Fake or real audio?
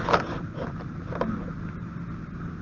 real